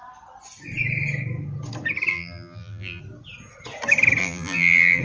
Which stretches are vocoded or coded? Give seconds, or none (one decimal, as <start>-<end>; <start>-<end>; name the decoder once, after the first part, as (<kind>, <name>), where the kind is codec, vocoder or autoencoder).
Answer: 2.1-3.0 (vocoder, BigVGAN v2); 4.2-5.0